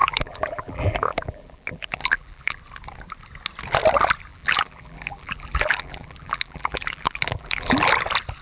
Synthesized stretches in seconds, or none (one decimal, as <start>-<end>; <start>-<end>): 0.0-2.6; 4.3-7.9